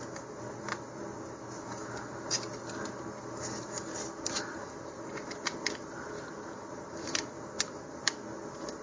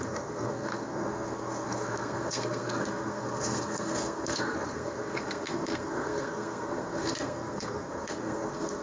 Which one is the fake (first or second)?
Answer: second